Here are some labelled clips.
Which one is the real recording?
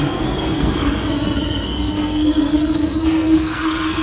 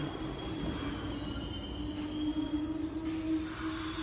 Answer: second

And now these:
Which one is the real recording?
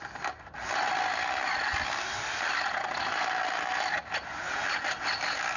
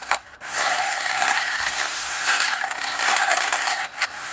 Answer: first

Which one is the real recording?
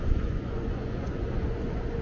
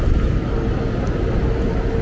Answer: second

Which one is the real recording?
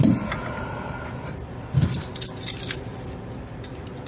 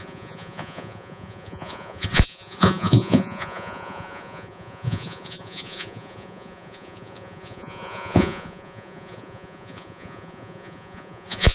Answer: first